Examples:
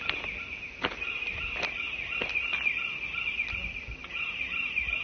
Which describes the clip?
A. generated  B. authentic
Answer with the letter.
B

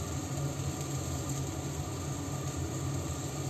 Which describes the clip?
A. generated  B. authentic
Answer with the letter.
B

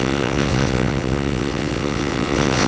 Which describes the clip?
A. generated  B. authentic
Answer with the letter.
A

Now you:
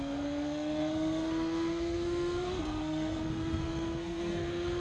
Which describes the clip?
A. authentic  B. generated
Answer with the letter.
B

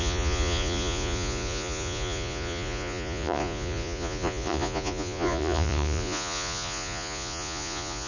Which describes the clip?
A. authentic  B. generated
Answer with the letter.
B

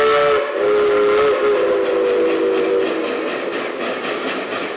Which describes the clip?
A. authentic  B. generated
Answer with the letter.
A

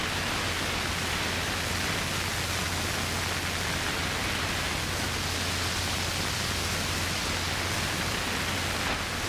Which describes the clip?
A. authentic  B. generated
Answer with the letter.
A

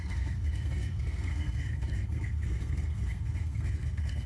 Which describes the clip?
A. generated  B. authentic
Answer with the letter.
A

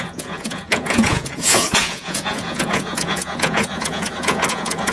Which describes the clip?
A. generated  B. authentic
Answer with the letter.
A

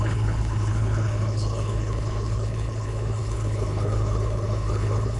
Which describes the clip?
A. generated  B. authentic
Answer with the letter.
A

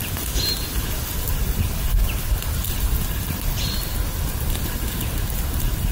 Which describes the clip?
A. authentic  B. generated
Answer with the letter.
A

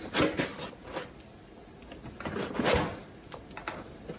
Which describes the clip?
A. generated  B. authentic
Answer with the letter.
B